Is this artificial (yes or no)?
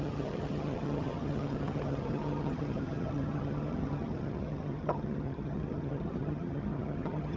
yes